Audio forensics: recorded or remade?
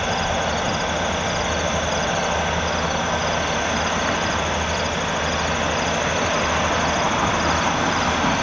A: recorded